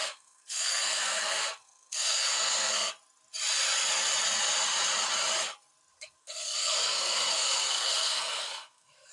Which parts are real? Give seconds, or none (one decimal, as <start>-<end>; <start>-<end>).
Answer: 2.9-5.9